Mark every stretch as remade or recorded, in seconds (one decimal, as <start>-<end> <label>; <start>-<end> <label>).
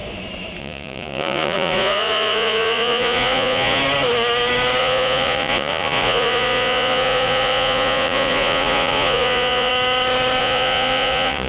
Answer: 0.0-0.6 recorded; 0.6-3.8 remade; 3.8-4.8 recorded; 4.8-9.7 remade; 9.7-10.4 recorded; 10.4-11.5 remade